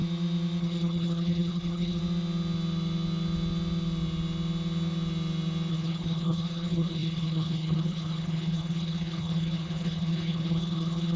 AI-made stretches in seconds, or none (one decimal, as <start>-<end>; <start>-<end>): 0.6-2.0; 5.7-11.2